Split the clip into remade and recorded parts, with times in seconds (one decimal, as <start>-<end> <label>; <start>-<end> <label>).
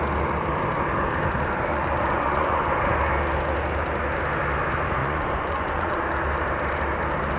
0.0-1.7 recorded; 1.7-2.7 remade; 2.7-5.0 recorded; 5.0-6.0 remade; 6.0-7.4 recorded